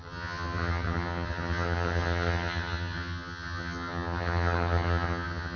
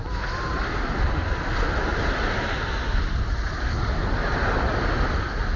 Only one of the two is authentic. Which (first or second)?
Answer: second